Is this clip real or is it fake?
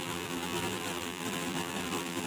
fake